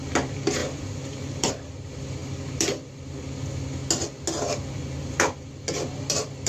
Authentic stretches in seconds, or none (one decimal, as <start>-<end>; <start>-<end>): 3.8-5.0